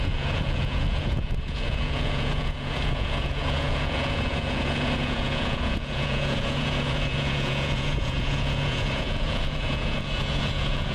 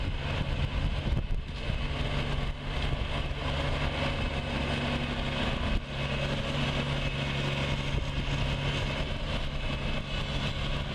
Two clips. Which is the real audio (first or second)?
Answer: second